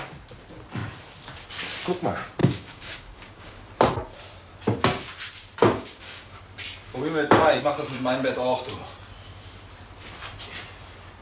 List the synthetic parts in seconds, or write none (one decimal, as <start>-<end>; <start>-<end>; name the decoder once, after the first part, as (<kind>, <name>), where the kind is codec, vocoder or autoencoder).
2.4-3.6 (codec, DAC); 5.6-6.4; 6.9-7.6